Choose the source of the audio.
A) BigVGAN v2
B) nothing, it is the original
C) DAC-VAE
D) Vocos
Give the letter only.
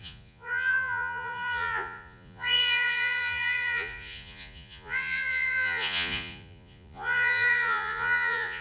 D